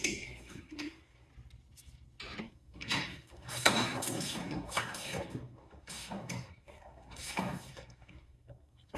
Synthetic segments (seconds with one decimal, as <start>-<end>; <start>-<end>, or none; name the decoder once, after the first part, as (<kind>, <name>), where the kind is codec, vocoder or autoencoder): 0.0-1.3 (codec, SNAC); 2.4-9.0